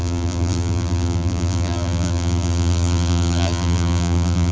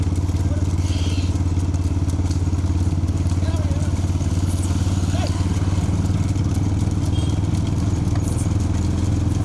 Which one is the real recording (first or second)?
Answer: second